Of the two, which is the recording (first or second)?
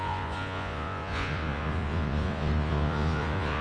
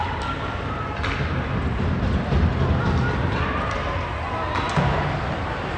second